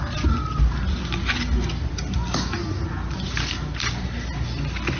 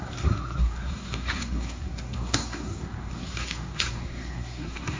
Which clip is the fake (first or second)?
second